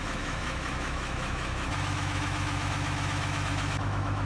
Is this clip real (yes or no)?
no